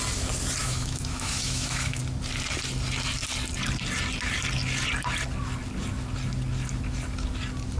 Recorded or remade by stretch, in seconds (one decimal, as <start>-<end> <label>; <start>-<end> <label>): 0.0-0.6 recorded; 0.6-2.0 remade; 2.0-7.8 recorded